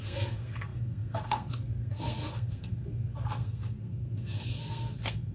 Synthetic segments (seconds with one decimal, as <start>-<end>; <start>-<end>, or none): 0.0-5.3